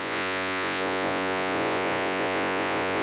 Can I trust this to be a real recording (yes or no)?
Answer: no